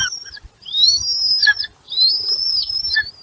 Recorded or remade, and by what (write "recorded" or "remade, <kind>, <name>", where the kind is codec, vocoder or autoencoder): recorded